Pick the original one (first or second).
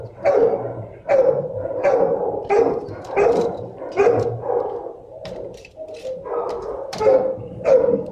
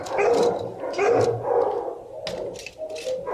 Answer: second